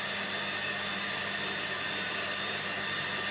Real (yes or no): yes